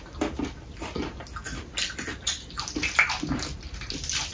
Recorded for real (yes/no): yes